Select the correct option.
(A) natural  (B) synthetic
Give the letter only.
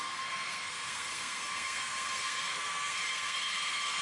B